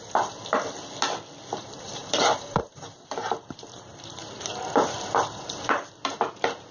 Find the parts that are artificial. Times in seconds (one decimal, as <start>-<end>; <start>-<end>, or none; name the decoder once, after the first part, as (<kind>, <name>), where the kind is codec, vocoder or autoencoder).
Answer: 0.0-0.4 (vocoder, BigVGAN v2); 1.6-6.7